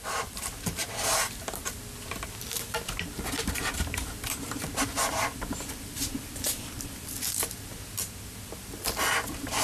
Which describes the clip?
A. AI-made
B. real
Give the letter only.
A